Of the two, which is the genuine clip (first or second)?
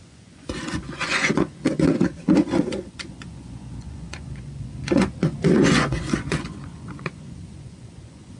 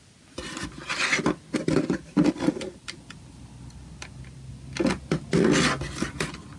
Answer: second